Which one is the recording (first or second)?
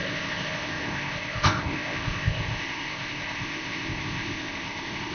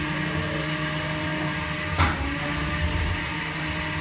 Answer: second